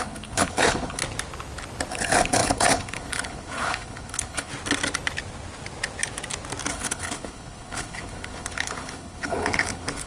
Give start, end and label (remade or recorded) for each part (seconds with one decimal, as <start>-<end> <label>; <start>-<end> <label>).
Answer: 0.0-1.0 remade; 1.0-1.9 recorded; 1.9-4.5 remade; 4.5-6.7 recorded; 6.7-10.1 remade